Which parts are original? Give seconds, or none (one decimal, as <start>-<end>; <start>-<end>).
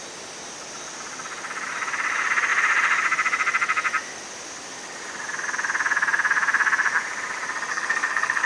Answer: 0.0-7.7